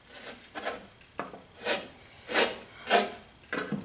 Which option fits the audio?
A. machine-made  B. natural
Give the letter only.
B